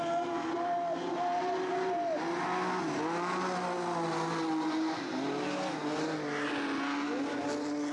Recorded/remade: recorded